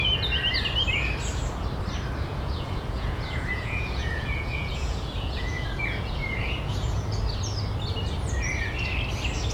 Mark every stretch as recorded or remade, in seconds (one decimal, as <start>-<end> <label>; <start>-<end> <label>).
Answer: 0.0-2.3 recorded; 2.3-7.2 remade; 7.2-9.5 recorded